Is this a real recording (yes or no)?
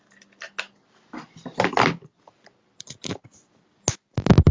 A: yes